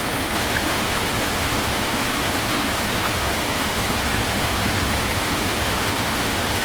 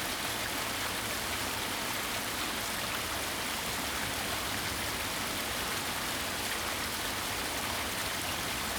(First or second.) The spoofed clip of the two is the first